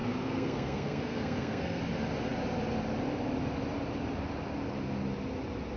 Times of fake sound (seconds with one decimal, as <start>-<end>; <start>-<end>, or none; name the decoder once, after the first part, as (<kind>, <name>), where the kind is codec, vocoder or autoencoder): 0.0-1.8 (codec, SNAC)